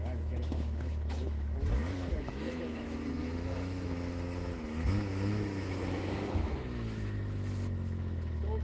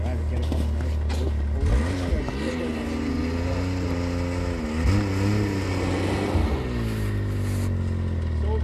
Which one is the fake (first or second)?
first